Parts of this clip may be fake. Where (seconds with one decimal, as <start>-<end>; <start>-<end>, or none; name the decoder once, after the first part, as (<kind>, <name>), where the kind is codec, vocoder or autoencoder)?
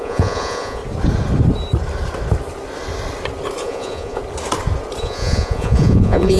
0.0-0.8 (vocoder, Vocos); 3.6-4.2; 5.0-6.4